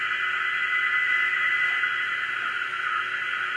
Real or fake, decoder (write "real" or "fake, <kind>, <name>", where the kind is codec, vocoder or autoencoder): real